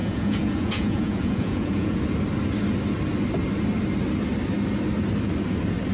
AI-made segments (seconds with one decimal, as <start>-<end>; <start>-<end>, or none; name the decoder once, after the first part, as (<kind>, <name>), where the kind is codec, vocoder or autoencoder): 0.0-2.0 (vocoder, Vocos)